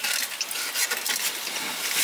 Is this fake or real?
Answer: real